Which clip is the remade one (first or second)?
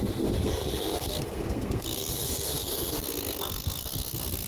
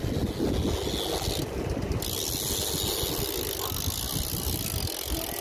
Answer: first